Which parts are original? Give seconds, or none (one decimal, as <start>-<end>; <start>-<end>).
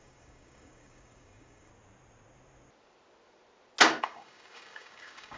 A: 1.7-4.0